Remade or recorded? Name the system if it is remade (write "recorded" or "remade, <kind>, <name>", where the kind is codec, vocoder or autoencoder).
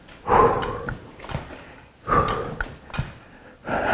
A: recorded